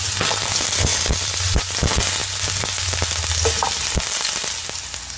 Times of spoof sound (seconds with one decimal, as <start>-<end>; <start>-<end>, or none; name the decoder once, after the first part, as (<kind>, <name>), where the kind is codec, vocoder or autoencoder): 0.9-1.8 (vocoder, BigVGAN v2)